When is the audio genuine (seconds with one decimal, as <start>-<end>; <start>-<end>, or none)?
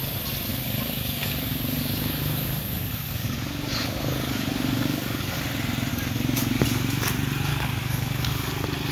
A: 0.0-0.5; 5.4-5.9; 6.6-7.5; 8.5-8.9